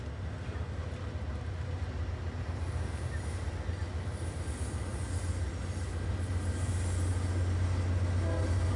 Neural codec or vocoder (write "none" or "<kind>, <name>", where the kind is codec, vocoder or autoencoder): none